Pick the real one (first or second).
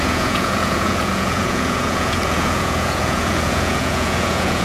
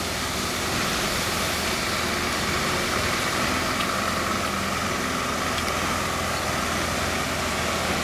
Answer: second